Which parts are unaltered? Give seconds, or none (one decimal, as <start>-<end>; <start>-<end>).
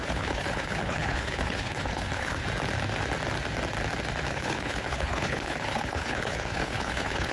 2.4-4.3